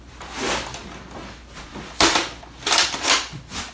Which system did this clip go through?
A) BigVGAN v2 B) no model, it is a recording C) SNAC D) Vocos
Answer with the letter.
B